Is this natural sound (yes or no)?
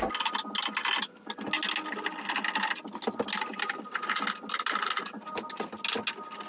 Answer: yes